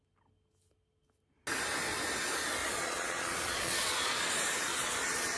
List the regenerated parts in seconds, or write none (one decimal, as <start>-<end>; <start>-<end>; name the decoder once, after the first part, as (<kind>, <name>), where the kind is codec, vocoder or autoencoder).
2.6-4.3 (vocoder, Vocos); 4.7-5.4